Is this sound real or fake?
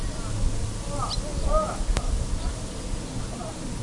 real